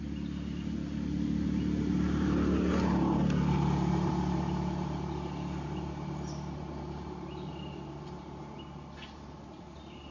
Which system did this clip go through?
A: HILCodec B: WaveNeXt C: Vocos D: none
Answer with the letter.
D